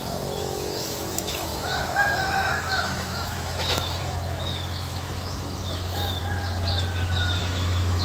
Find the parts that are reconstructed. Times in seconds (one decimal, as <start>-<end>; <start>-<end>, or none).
0.0-6.2; 7.4-8.0